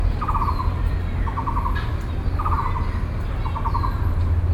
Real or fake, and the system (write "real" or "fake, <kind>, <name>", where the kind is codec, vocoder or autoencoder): real